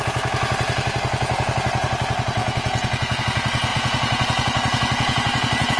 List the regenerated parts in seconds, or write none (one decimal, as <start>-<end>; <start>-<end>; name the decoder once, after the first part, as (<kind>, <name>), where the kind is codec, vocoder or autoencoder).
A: 2.4-3.2 (vocoder, Vocos); 3.7-5.8